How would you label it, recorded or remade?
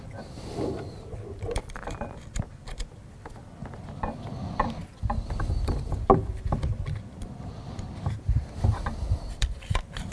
remade